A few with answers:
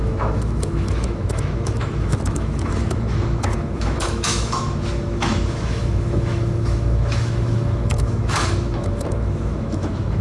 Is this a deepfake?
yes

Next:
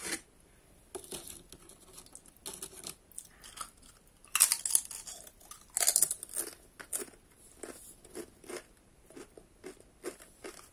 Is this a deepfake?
no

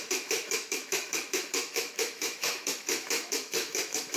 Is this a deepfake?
yes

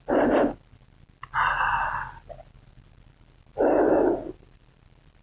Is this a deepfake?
no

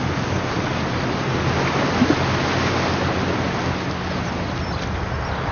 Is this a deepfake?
no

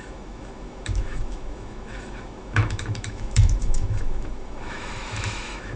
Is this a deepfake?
yes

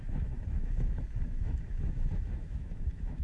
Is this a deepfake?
yes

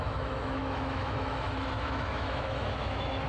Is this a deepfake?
yes